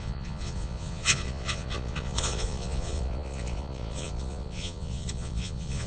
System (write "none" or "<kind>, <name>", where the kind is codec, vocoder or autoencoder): vocoder, Vocos